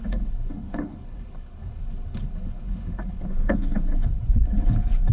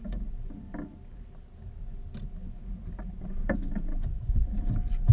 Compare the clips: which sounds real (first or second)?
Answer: second